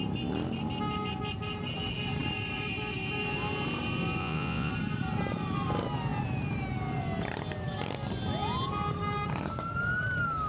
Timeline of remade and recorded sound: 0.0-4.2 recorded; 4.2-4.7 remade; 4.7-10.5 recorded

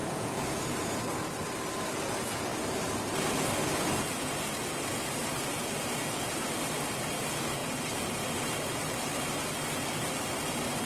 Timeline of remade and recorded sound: 0.0-0.6 remade; 0.6-10.9 recorded

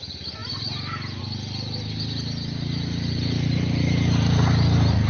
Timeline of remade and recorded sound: 0.0-5.1 recorded

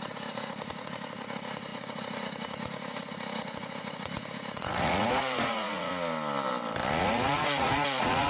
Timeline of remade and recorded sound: 0.0-5.9 remade; 5.9-7.0 recorded; 7.0-8.3 remade

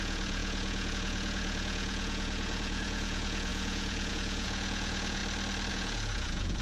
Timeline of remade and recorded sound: 0.0-5.2 remade; 5.2-5.7 recorded; 5.7-6.6 remade

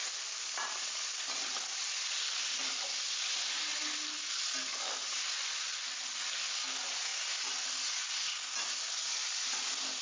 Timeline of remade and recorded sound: 0.0-10.0 recorded

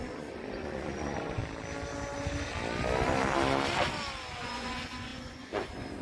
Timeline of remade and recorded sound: 0.0-1.4 remade; 1.4-4.4 recorded; 4.4-6.0 remade